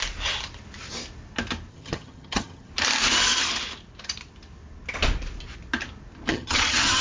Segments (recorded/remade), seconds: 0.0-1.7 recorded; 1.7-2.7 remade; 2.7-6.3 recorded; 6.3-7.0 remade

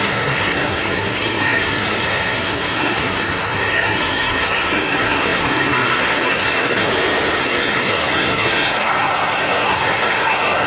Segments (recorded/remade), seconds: 0.0-6.9 remade; 6.9-7.4 recorded; 7.4-10.7 remade

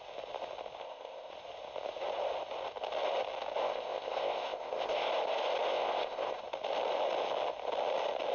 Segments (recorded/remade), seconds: 0.0-0.8 recorded; 0.8-1.3 remade; 1.3-3.6 recorded; 3.6-5.1 remade; 5.1-5.7 recorded; 5.7-6.4 remade; 6.4-8.3 recorded

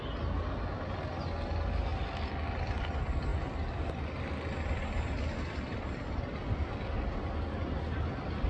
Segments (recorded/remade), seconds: 0.0-1.9 recorded; 1.9-2.9 remade; 2.9-8.5 recorded

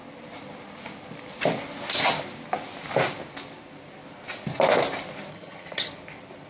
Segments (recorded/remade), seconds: 0.0-5.3 recorded; 5.3-5.9 remade; 5.9-6.5 recorded